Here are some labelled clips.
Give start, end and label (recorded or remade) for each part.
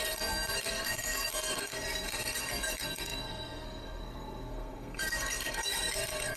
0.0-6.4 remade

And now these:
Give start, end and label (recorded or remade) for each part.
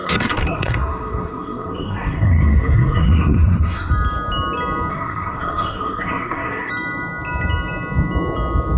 0.0-3.9 remade; 3.9-4.9 recorded; 4.9-6.7 remade; 6.7-8.8 recorded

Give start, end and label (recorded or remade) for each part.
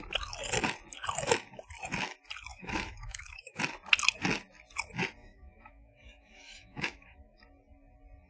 0.0-2.5 recorded; 2.5-3.6 remade; 3.6-5.2 recorded; 5.2-7.4 remade; 7.4-8.3 recorded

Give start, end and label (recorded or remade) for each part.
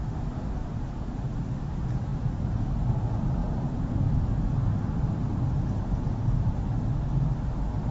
0.0-0.6 recorded; 0.6-1.2 remade; 1.2-7.9 recorded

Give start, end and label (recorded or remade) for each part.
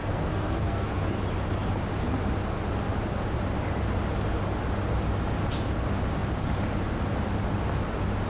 0.0-1.0 remade; 1.0-8.3 recorded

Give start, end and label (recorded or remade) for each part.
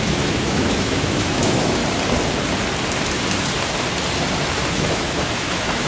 0.0-1.8 remade; 1.8-4.7 recorded; 4.7-5.9 remade